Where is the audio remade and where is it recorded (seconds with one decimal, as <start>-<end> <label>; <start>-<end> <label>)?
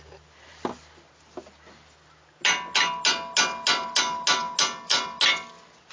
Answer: 0.0-5.9 recorded